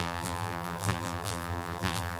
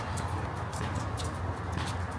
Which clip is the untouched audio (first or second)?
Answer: second